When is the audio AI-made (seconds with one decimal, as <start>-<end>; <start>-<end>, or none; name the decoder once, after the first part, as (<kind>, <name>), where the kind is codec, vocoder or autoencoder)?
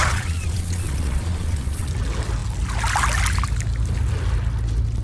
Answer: 0.0-1.9 (vocoder, Vocos)